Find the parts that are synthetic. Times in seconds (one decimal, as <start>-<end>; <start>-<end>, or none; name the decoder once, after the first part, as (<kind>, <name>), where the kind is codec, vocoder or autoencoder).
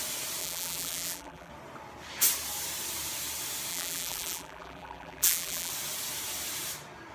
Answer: 0.4-1.5 (vocoder, BigVGAN v2); 3.7-5.7